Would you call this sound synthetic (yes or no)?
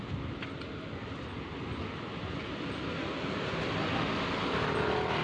no